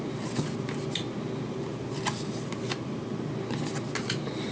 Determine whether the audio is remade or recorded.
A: recorded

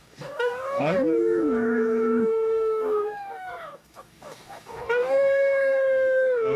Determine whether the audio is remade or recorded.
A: remade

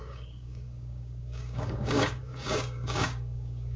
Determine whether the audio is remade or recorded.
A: remade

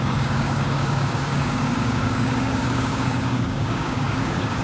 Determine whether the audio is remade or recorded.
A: remade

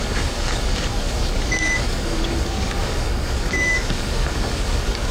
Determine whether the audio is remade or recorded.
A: remade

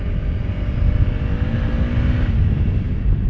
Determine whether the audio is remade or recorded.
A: recorded